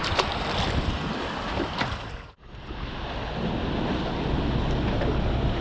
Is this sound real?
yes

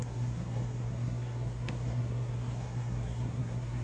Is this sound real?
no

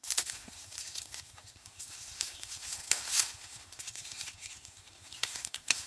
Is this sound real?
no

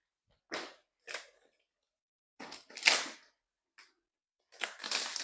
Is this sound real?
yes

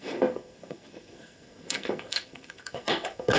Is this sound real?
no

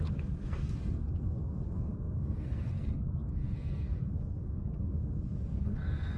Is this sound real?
no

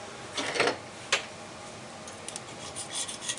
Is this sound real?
yes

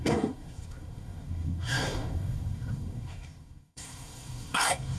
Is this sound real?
no